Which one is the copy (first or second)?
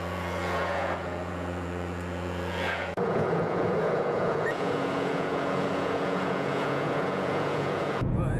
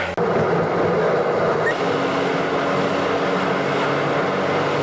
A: first